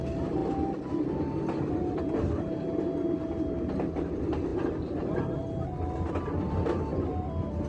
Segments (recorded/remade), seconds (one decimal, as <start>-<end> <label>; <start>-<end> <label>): 0.0-7.7 recorded

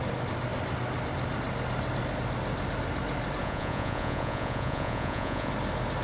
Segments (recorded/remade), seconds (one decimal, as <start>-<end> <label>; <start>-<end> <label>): 0.0-3.4 recorded; 3.4-5.5 remade; 5.5-6.0 recorded

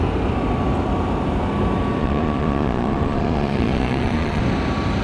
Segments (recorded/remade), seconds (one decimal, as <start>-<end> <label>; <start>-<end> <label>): 0.0-2.0 recorded; 2.0-4.4 remade; 4.4-5.0 recorded

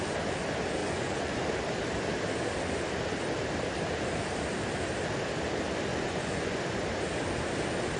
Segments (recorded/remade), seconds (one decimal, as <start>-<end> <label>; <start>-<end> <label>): 0.0-0.8 recorded; 0.8-1.4 remade; 1.4-5.9 recorded; 5.9-6.6 remade; 6.6-8.0 recorded